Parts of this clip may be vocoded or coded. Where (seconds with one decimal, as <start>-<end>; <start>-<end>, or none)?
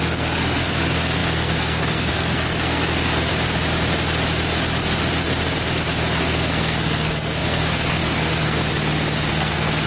0.0-3.3; 6.2-8.6; 9.3-9.9